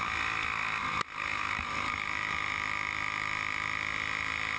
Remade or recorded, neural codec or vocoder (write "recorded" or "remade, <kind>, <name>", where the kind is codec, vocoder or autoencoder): recorded